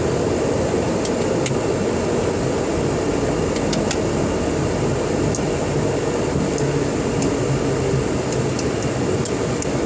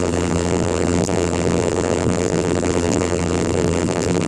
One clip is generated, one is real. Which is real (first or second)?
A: first